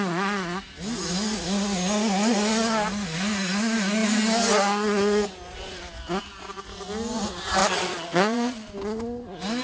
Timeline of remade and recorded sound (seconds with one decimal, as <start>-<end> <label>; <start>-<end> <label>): 0.0-7.6 recorded; 7.6-8.7 remade; 8.7-9.6 recorded